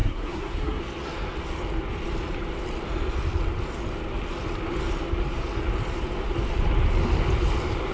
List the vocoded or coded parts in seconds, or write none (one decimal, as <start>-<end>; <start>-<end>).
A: 0.0-0.8